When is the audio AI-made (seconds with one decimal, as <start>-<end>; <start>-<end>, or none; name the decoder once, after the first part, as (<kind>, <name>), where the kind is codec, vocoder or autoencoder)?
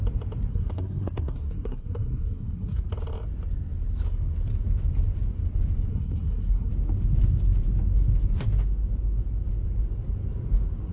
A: 0.5-2.8 (codec, SNAC); 5.9-6.7